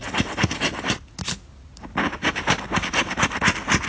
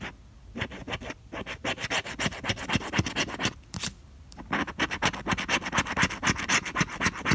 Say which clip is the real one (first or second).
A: first